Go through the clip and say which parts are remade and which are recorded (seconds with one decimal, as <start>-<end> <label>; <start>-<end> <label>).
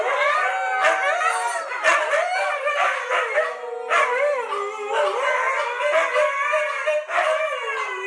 0.0-8.1 recorded